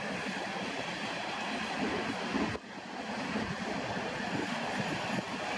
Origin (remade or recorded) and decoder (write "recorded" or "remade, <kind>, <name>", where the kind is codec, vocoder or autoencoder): recorded